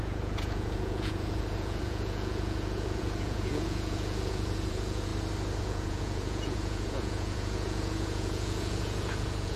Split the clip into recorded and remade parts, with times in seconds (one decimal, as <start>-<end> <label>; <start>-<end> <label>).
0.0-5.1 remade; 5.1-5.6 recorded; 5.6-9.6 remade